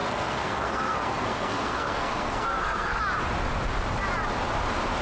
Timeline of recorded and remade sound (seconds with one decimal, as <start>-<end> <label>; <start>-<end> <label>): 0.0-3.0 remade; 3.0-5.0 recorded